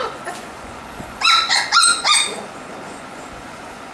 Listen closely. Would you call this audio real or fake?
fake